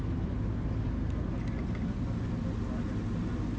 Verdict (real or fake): real